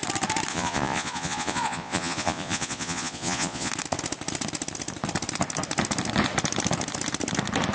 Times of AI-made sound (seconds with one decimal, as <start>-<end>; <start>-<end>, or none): 0.5-3.7